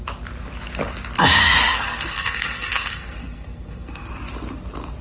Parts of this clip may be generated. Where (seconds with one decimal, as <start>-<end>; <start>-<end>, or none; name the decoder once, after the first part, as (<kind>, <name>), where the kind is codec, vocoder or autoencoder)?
1.7-4.1 (codec, SNAC)